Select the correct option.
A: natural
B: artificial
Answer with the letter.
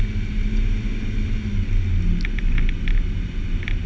A